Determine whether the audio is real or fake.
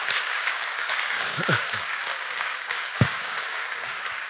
fake